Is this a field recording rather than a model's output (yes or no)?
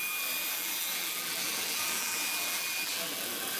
no